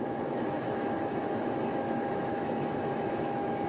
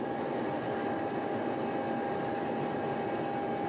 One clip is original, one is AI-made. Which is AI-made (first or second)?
first